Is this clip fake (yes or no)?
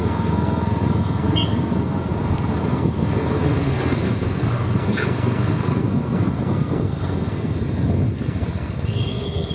yes